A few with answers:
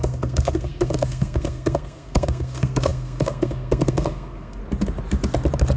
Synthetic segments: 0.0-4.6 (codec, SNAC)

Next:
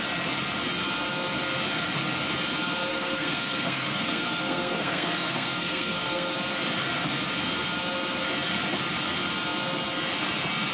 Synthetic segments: 2.9-6.3 (codec, SNAC)

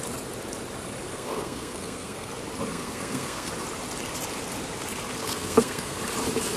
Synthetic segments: 1.1-2.3 (codec, SNAC); 2.7-3.5; 5.2-6.0

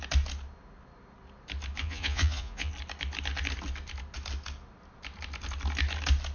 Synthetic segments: 1.8-2.7 (vocoder, Vocos)

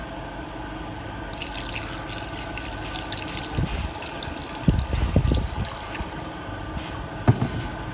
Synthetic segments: none

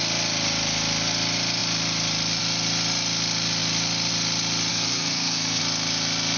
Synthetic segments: 4.7-5.6 (codec, SNAC)

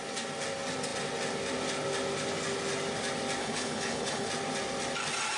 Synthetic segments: 3.4-4.3 (codec, HILCodec)

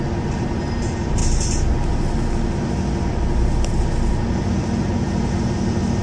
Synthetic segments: none